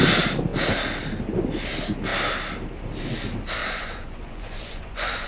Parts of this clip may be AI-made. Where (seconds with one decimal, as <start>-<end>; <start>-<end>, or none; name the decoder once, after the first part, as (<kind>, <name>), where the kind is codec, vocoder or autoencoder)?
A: 3.6-5.3 (vocoder, Vocos)